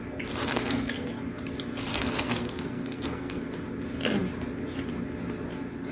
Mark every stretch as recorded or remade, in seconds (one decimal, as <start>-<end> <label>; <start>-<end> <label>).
0.0-0.4 recorded; 0.4-1.1 remade; 1.1-1.9 recorded; 1.9-3.4 remade; 3.4-5.9 recorded

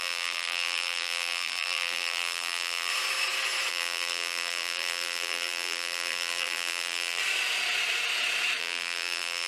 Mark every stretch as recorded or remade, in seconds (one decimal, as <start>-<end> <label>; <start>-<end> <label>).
0.0-2.9 remade; 2.9-3.7 recorded; 3.7-7.2 remade; 7.2-8.6 recorded; 8.6-9.5 remade

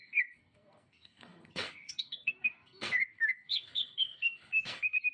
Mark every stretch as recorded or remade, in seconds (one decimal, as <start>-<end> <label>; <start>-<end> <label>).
0.0-5.1 remade

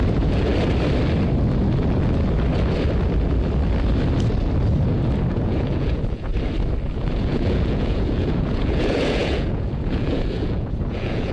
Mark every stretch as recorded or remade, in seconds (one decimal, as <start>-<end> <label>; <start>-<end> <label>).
0.0-0.5 remade; 0.5-5.3 recorded; 5.3-6.3 remade; 6.3-6.9 recorded; 6.9-11.3 remade

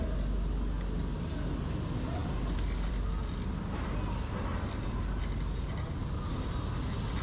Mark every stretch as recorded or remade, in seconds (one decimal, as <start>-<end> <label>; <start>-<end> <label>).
0.0-7.2 recorded

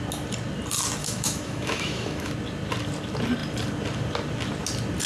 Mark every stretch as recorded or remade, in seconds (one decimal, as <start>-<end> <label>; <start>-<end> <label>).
0.0-1.0 recorded; 1.0-2.3 remade; 2.3-5.1 recorded